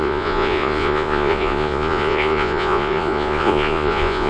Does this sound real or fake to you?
fake